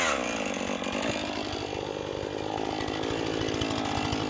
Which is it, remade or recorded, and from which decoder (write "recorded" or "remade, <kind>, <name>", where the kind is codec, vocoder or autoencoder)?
recorded